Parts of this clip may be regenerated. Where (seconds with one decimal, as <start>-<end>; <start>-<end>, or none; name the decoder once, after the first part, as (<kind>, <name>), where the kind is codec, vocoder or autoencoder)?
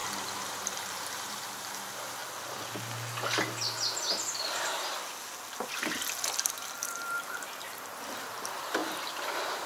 0.0-2.2 (vocoder, BigVGAN v2); 6.5-9.7